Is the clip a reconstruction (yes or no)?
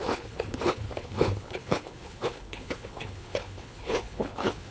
yes